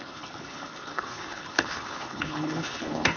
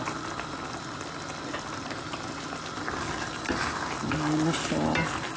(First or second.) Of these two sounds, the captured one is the second